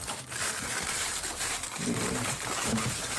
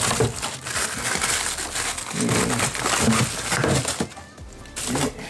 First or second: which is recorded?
second